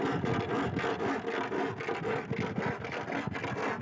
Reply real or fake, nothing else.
real